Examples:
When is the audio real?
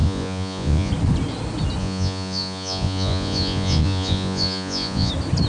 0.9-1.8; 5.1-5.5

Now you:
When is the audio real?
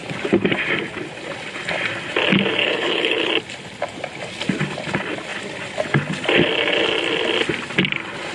0.0-2.6; 3.3-8.3